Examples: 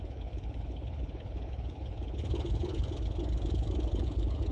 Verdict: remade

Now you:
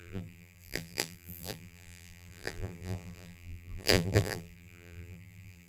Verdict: remade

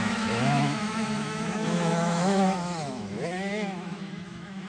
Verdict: remade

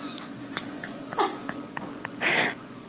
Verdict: remade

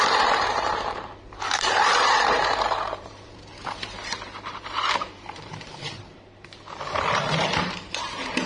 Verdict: remade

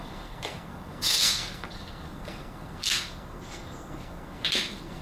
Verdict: remade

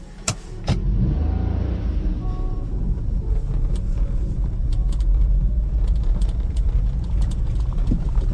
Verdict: remade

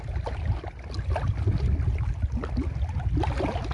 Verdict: recorded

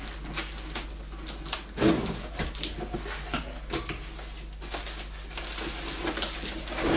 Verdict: recorded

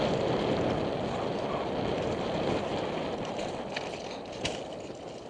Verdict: recorded